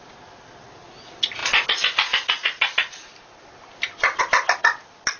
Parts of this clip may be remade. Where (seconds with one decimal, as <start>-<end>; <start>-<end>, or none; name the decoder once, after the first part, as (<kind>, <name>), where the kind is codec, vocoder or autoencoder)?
none

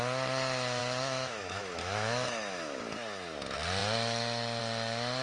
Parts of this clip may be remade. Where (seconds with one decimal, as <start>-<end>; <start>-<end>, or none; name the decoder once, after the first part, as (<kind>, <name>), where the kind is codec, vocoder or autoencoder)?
0.8-2.8 (autoencoder, DAC-VAE)

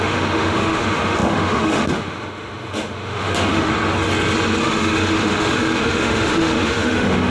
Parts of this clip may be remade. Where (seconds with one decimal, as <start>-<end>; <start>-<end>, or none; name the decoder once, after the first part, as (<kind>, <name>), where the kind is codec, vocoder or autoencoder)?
0.0-3.7 (autoencoder, DAC-VAE); 4.6-7.3